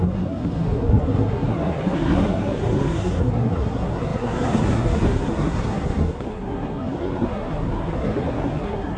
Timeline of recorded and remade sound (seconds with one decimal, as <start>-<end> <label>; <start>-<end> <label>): 0.0-9.0 remade